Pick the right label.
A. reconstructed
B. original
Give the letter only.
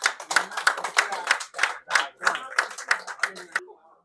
B